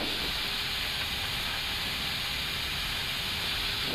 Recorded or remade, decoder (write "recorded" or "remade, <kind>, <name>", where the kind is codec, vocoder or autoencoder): recorded